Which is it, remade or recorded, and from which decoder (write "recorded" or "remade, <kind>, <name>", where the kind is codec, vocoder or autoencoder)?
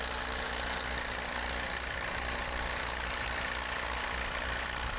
recorded